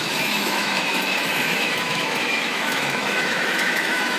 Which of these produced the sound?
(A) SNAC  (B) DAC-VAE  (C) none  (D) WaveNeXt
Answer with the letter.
B